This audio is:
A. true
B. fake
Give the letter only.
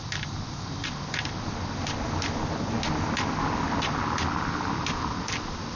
A